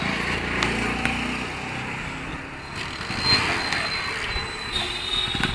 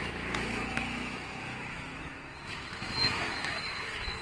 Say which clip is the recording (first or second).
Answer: first